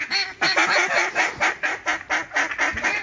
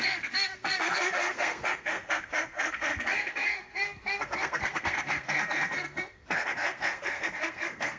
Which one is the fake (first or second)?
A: second